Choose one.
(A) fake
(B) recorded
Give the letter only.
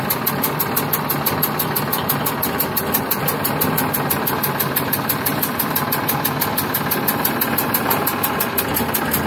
B